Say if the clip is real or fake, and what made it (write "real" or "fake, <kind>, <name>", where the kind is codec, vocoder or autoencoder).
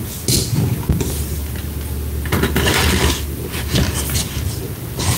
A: real